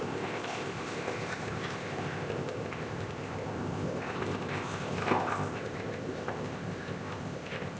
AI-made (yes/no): yes